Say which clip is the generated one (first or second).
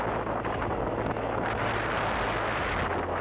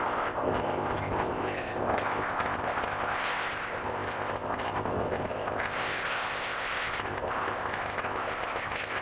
second